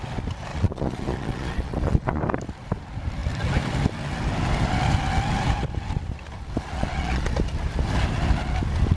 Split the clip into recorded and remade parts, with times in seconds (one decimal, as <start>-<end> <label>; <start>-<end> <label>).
0.0-0.5 recorded; 0.5-2.2 remade; 2.2-6.8 recorded; 6.8-7.3 remade; 7.3-9.0 recorded